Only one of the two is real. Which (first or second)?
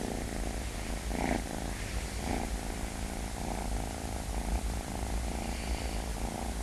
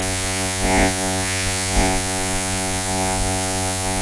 first